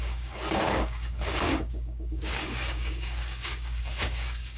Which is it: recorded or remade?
remade